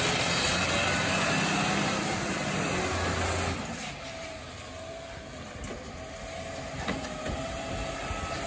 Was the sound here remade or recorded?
recorded